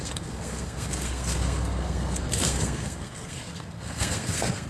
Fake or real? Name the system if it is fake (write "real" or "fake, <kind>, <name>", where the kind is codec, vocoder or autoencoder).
fake, codec, SNAC